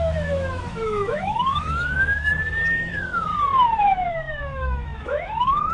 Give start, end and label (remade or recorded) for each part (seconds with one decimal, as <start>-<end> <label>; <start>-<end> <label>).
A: 0.0-2.3 remade; 2.3-2.9 recorded; 2.9-3.3 remade; 3.3-4.1 recorded; 4.1-5.7 remade

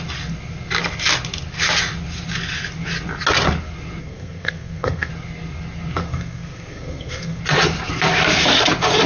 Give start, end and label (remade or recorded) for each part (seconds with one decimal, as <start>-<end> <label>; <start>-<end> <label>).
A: 0.0-4.0 recorded; 4.0-5.1 remade; 5.1-6.0 recorded; 6.0-7.4 remade; 7.4-9.1 recorded

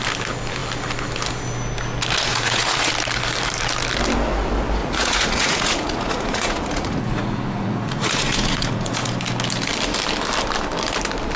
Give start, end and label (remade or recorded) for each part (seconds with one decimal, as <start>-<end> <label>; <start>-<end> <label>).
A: 0.0-2.3 recorded; 2.3-2.9 remade; 2.9-4.8 recorded; 4.8-9.1 remade; 9.1-11.4 recorded

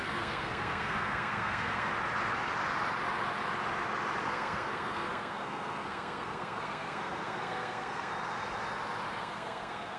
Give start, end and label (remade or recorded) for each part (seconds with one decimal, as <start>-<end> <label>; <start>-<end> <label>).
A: 0.0-1.9 remade; 1.9-4.2 recorded; 4.2-8.1 remade; 8.1-9.2 recorded; 9.2-10.0 remade

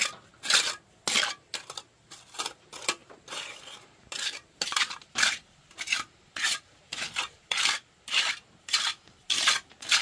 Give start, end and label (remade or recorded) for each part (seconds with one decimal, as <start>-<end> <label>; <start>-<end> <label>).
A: 0.0-3.0 recorded; 3.0-7.5 remade; 7.5-10.0 recorded

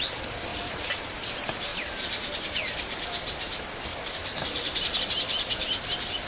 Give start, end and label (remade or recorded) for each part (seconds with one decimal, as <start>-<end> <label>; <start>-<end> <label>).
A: 0.0-0.5 recorded; 0.5-1.1 remade; 1.1-1.7 recorded; 1.7-2.6 remade; 2.6-3.9 recorded; 3.9-5.0 remade; 5.0-6.3 recorded

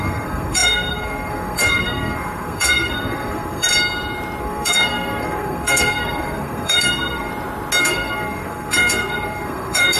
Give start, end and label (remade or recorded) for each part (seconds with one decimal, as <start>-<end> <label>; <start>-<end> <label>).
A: 0.0-3.7 remade; 3.7-4.4 recorded; 4.4-7.3 remade; 7.3-7.8 recorded; 7.8-10.0 remade